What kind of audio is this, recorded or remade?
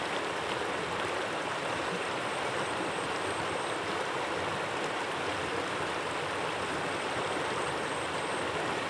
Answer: remade